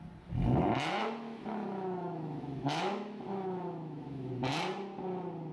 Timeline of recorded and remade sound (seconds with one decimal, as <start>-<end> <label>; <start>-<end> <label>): 0.0-1.0 recorded; 1.0-4.3 remade; 4.3-5.5 recorded